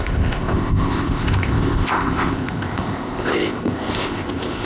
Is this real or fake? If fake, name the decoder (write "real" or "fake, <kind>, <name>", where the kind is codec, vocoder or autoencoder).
fake, codec, ZipCodec